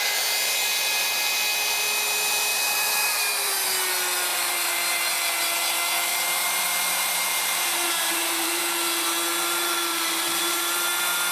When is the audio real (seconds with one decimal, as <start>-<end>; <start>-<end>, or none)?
0.0-2.5; 3.5-4.3; 4.8-6.1; 8.6-9.9; 10.7-11.3